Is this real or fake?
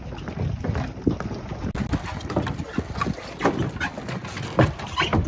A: real